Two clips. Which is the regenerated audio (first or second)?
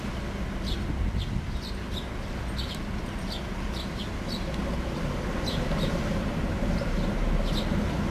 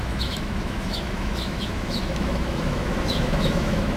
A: second